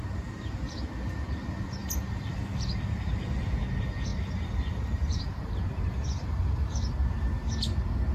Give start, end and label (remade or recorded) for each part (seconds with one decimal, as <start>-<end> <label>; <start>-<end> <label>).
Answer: 0.0-1.8 recorded; 1.8-3.5 remade; 3.5-4.1 recorded; 4.1-6.9 remade; 6.9-8.1 recorded